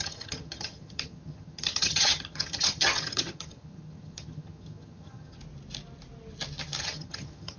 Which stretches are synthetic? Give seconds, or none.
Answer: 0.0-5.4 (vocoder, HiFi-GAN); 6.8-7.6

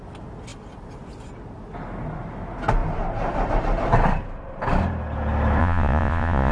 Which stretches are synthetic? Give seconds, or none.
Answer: 5.6-6.5 (vocoder, Vocos)